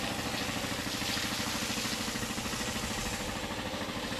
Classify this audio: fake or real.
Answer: real